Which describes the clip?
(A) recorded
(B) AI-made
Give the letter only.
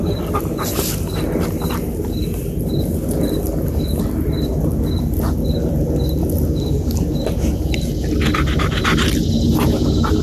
A